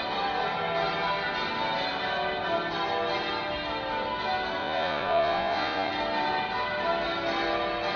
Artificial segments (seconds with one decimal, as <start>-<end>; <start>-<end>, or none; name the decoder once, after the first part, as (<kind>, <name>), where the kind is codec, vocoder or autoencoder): 4.6-5.9 (vocoder, Vocos)